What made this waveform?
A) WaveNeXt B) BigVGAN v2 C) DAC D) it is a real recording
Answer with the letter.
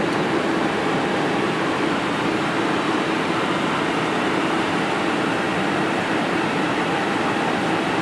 B